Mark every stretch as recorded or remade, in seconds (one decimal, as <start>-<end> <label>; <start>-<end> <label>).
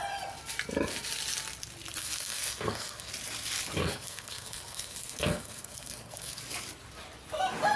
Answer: 0.0-2.0 recorded; 2.0-3.1 remade; 3.1-3.8 recorded; 3.8-6.4 remade; 6.4-7.8 recorded